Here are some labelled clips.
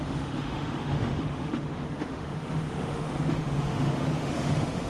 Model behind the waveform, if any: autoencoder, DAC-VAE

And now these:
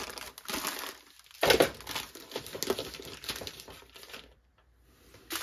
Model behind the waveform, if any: none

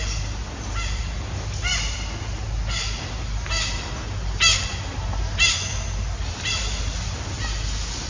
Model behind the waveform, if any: none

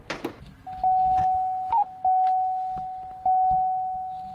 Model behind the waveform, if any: none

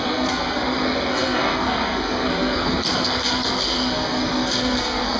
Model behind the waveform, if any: codec, SNAC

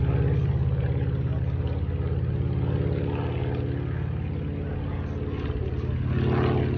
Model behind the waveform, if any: none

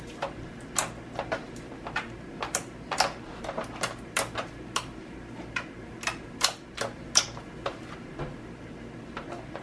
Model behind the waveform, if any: none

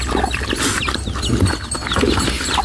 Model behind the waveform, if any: none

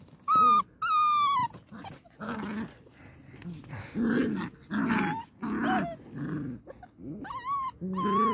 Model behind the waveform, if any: none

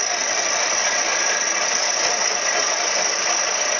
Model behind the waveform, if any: none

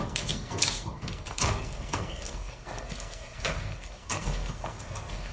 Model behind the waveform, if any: codec, SNAC